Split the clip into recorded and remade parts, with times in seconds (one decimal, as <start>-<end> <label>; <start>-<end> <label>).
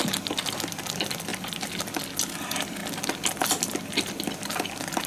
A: 0.0-1.3 recorded; 1.3-2.0 remade; 2.0-5.1 recorded